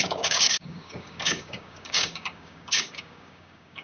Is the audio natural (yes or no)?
no